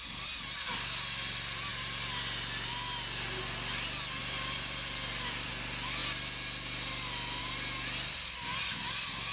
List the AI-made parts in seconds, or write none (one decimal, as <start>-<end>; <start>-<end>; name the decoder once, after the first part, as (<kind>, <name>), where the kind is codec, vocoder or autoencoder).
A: 4.2-5.5 (vocoder, BigVGAN v2)

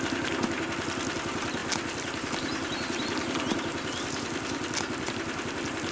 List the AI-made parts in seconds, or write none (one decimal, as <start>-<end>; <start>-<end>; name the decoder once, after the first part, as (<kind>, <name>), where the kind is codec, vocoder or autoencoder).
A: 1.6-5.1 (vocoder, BigVGAN v2)